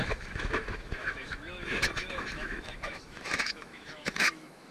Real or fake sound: fake